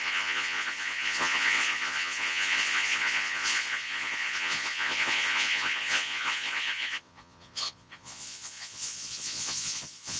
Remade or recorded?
remade